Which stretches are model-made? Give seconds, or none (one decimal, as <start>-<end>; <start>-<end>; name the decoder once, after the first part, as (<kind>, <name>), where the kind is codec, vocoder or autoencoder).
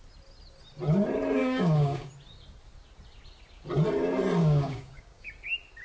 1.4-2.1 (codec, DAC); 4.4-5.3